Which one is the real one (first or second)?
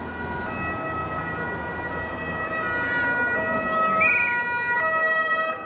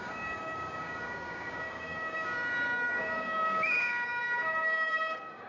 first